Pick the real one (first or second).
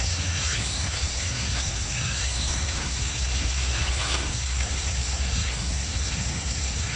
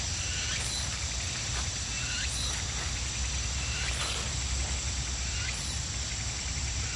second